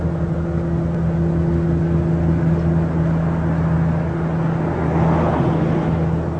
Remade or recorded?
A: recorded